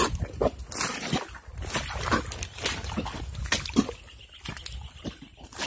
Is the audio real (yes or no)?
yes